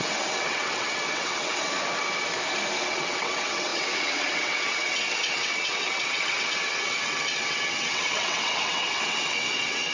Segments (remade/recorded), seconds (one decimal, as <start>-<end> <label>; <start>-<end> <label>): 0.0-1.7 remade; 1.7-2.8 recorded; 2.8-9.9 remade